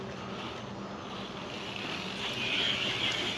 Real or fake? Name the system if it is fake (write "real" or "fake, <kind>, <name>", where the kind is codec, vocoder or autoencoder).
real